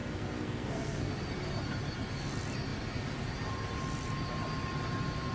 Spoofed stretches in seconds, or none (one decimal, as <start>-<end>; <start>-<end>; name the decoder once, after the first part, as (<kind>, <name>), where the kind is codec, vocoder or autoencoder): 0.0-1.1 (codec, SNAC)